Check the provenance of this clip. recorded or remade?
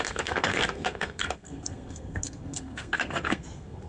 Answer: remade